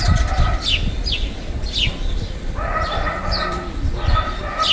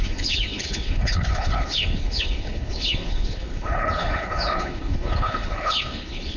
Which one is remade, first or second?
second